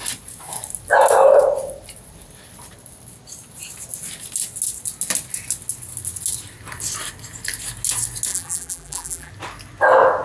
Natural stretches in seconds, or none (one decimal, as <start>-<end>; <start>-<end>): 0.0-8.3; 9.3-10.2